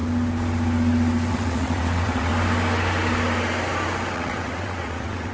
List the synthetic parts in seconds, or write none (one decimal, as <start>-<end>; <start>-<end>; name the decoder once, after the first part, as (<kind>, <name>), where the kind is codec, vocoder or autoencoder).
1.3-2.3 (vocoder, WaveNeXt); 4.1-5.3